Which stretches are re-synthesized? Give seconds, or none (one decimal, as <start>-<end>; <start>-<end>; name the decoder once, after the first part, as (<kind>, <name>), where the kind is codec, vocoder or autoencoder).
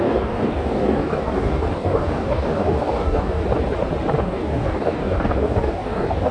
0.0-3.4 (codec, DAC); 4.2-6.3